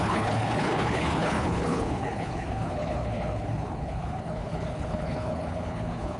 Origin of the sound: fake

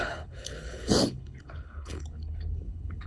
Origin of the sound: fake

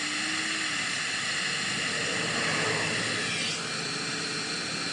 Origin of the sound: real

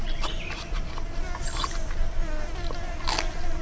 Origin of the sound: real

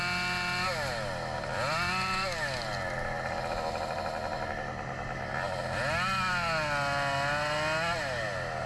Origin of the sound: real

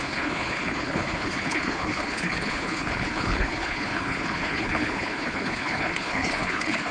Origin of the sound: fake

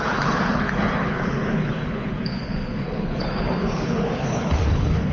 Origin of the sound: fake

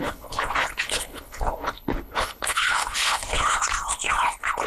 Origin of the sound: fake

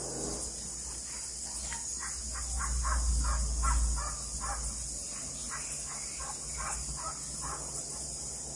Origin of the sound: real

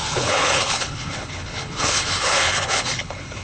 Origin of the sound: fake